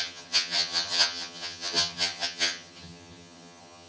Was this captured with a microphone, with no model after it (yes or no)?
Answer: no